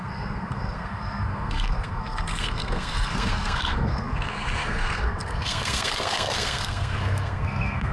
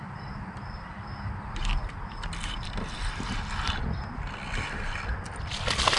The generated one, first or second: first